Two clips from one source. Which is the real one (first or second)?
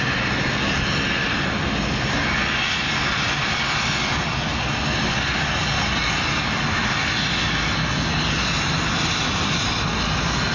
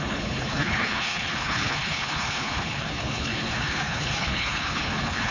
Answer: first